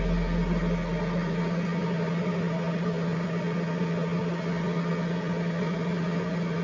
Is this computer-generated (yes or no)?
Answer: no